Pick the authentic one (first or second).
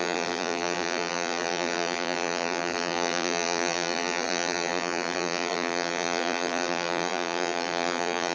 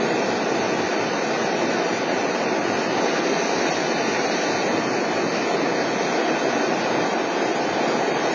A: second